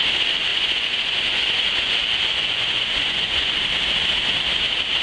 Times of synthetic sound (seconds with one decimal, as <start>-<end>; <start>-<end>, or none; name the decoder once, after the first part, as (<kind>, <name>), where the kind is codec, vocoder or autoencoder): 0.5-3.5 (vocoder, Vocos)